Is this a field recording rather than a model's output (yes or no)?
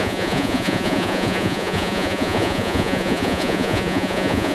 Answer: no